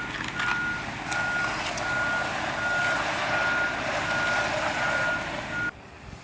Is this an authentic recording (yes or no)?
yes